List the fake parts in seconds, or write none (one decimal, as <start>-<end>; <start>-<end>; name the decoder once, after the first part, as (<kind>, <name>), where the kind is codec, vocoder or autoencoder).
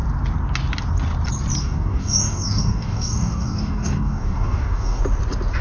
1.6-5.0 (codec, DAC)